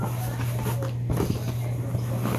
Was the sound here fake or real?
real